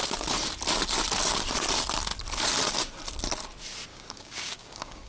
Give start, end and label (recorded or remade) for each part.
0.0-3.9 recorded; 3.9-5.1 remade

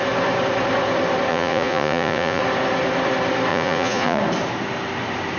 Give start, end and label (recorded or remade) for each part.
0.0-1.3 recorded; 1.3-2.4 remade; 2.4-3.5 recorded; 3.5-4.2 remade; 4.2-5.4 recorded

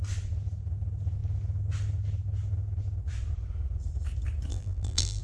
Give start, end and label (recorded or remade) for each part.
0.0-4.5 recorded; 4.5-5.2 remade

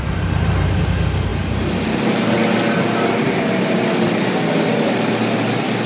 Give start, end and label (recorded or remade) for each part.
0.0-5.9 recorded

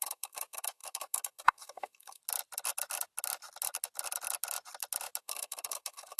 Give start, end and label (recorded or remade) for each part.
0.0-2.2 remade; 2.2-5.2 recorded; 5.2-6.2 remade

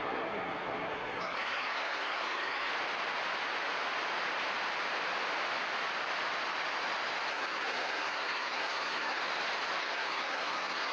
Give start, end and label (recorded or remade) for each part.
0.0-2.7 remade; 2.7-7.3 recorded; 7.3-9.2 remade; 9.2-9.8 recorded; 9.8-10.9 remade

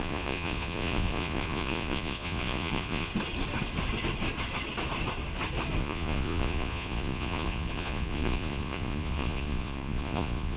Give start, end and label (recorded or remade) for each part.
0.0-3.1 remade; 3.1-5.8 recorded; 5.8-10.6 remade